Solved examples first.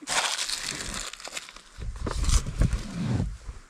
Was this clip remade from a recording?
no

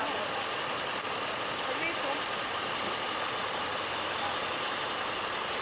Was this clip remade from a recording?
no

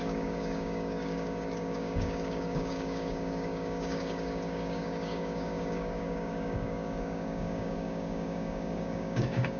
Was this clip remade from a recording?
yes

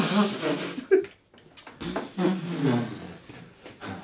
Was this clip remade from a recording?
no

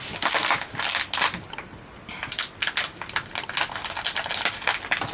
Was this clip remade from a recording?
no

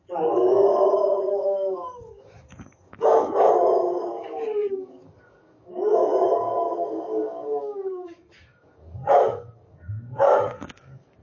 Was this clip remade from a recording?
yes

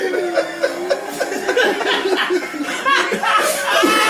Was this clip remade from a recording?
no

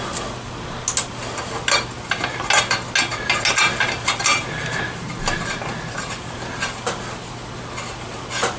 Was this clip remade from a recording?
no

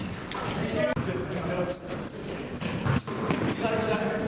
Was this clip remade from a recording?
no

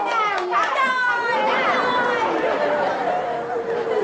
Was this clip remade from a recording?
no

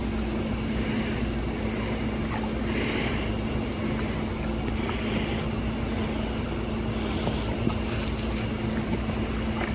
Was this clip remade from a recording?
no